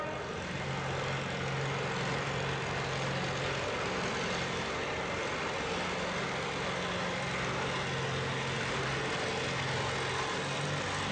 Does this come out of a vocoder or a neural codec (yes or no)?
no